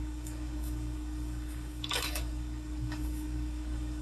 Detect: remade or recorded remade